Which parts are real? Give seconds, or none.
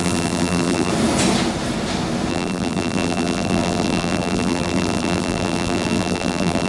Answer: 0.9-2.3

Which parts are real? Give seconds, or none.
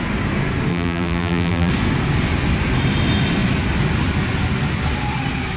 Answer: 0.0-0.7; 1.7-5.6